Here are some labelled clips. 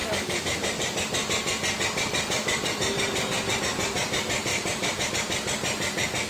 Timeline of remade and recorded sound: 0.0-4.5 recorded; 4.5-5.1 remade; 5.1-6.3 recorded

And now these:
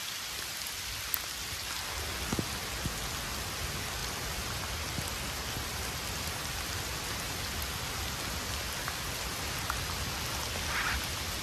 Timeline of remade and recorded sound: 0.0-1.1 remade; 1.1-4.0 recorded; 4.0-4.5 remade; 4.5-11.4 recorded

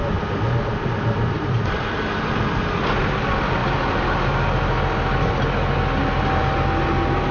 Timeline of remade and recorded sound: 0.0-2.4 remade; 2.4-7.3 recorded